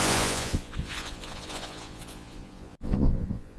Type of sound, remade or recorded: remade